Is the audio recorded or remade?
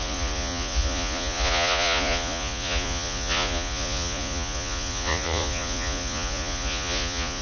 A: remade